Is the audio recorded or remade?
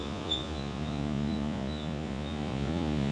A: remade